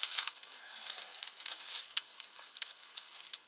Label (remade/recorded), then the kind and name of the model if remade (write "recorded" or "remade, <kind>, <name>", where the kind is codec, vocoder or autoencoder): remade, codec, SNAC